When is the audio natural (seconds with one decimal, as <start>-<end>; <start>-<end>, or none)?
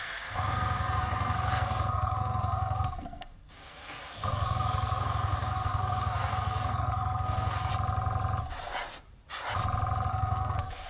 7.7-10.1